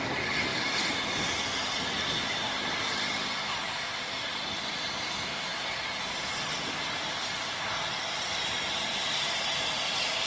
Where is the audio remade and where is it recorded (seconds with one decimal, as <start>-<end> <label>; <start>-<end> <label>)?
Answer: 0.0-10.3 recorded